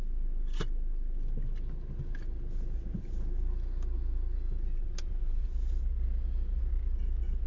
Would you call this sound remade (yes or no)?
no